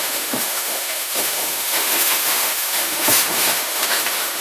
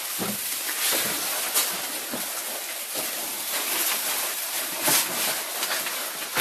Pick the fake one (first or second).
first